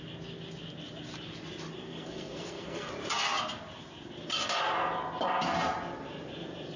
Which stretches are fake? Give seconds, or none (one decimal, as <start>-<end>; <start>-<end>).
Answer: 1.8-2.9